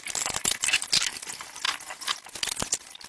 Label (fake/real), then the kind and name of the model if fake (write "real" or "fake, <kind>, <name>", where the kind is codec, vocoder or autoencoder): real